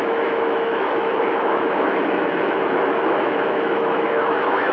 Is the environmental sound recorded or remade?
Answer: remade